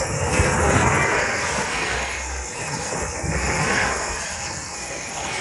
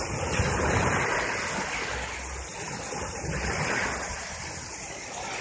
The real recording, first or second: second